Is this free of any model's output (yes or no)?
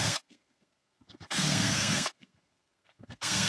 no